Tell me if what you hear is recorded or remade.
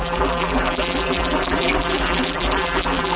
remade